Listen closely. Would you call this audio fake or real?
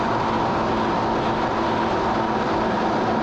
real